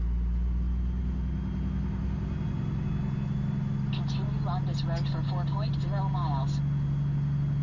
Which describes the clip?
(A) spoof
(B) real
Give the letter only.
B